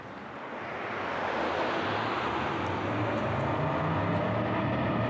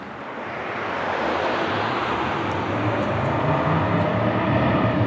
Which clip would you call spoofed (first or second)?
second